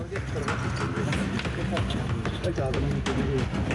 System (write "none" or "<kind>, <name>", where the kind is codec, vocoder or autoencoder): none